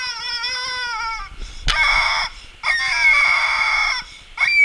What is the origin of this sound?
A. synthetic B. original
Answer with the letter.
B